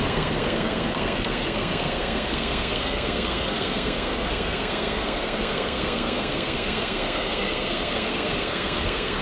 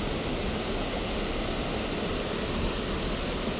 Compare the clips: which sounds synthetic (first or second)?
first